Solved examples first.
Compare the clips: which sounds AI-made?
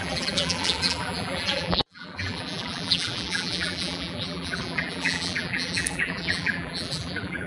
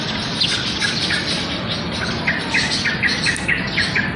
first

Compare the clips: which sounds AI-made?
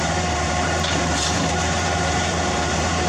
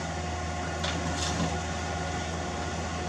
first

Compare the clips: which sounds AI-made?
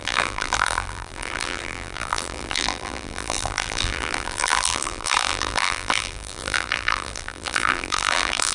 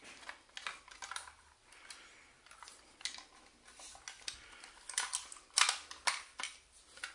first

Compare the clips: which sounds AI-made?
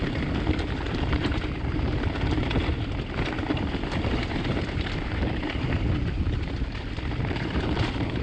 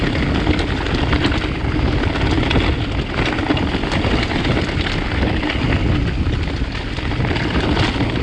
first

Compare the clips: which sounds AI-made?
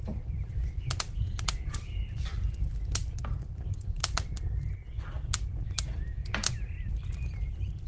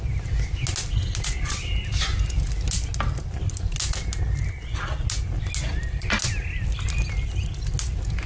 first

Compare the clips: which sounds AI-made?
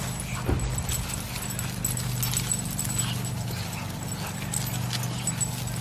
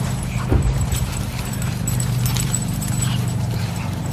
second